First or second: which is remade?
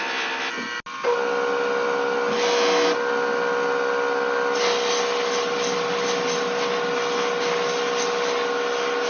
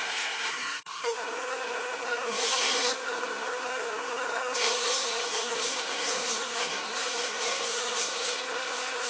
second